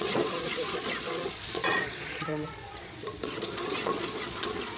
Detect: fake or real fake